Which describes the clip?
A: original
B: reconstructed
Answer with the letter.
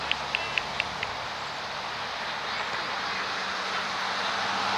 A